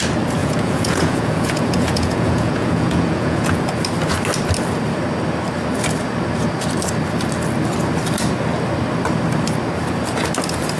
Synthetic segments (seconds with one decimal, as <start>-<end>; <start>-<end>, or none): 0.4-3.6